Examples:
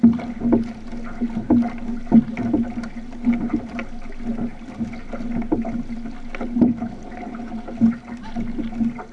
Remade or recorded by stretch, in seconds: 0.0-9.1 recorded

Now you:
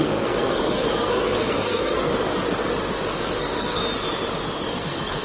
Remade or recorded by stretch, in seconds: 0.0-2.1 remade; 2.1-3.4 recorded; 3.4-3.8 remade; 3.8-4.7 recorded; 4.7-5.2 remade

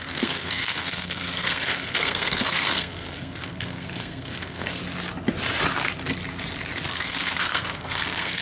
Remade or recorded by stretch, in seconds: 0.0-4.8 remade; 4.8-6.9 recorded; 6.9-8.4 remade

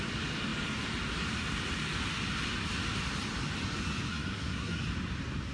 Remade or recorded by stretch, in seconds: 0.0-4.1 recorded; 4.1-4.8 remade; 4.8-5.5 recorded

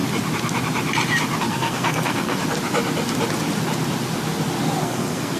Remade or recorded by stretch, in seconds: 0.0-1.4 recorded; 1.4-2.4 remade; 2.4-4.8 recorded; 4.8-5.4 remade

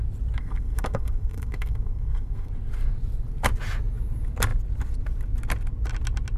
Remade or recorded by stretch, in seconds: 0.0-0.4 recorded; 0.4-2.5 remade; 2.5-6.4 recorded